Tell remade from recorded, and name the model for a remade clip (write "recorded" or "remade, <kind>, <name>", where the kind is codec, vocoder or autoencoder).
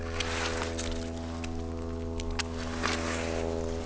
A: recorded